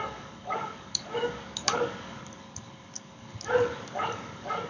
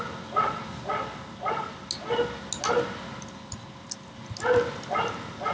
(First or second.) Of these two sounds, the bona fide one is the second